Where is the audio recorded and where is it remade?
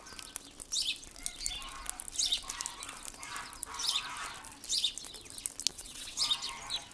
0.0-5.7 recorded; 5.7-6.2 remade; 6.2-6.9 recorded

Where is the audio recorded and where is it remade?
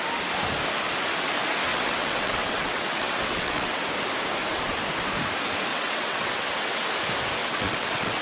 0.0-1.7 recorded; 1.7-3.8 remade; 3.8-5.7 recorded; 5.7-6.8 remade; 6.8-7.4 recorded; 7.4-8.2 remade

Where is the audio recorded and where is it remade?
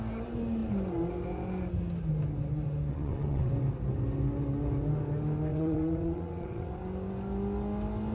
0.0-2.9 recorded; 2.9-3.5 remade; 3.5-5.5 recorded; 5.5-6.7 remade; 6.7-8.1 recorded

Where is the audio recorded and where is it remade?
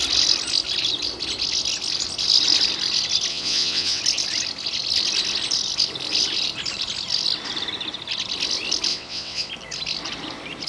0.0-3.3 recorded; 3.3-4.0 remade; 4.0-8.9 recorded; 8.9-9.5 remade; 9.5-10.7 recorded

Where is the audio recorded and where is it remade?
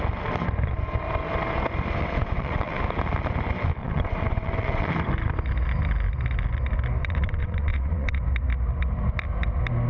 0.0-2.0 recorded; 2.0-2.8 remade; 2.8-3.8 recorded; 3.8-4.9 remade; 4.9-7.0 recorded; 7.0-8.2 remade; 8.2-9.9 recorded